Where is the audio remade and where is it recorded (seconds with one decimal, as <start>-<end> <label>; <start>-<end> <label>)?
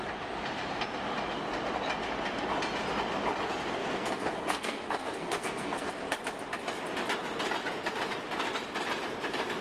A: 0.0-3.8 recorded; 3.8-5.9 remade; 5.9-9.6 recorded